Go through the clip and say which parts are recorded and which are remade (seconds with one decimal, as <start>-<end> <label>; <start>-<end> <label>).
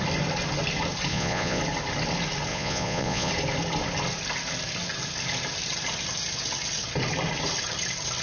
0.0-1.1 recorded; 1.1-1.6 remade; 1.6-2.5 recorded; 2.5-3.3 remade; 3.3-8.2 recorded